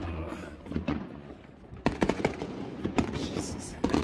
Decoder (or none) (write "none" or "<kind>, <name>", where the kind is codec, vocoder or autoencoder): vocoder, Vocos